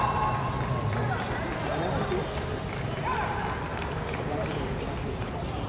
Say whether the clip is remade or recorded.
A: recorded